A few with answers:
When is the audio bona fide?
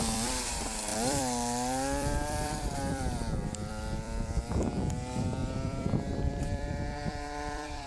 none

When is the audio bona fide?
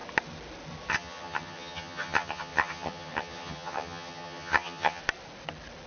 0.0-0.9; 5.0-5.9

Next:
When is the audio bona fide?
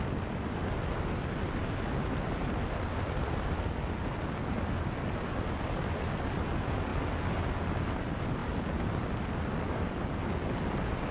0.0-11.1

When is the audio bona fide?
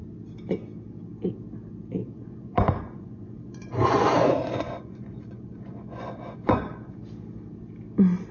0.0-2.0; 7.0-8.3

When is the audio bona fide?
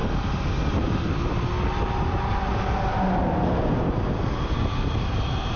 0.0-5.6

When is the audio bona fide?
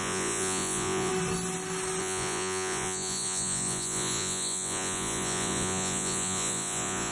1.1-2.0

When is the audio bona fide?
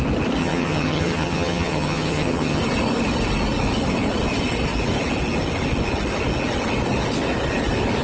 0.0-0.4; 2.6-8.0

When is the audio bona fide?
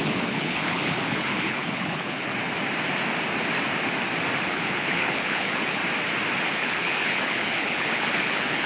2.3-4.4; 5.8-6.5